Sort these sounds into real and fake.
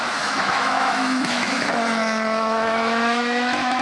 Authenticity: fake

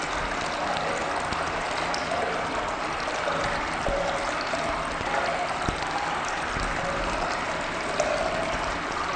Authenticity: real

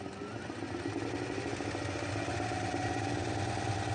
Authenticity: real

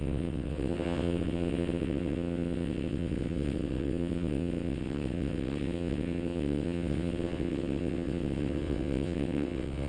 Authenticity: fake